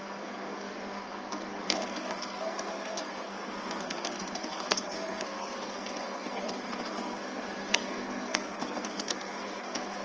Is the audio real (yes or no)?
no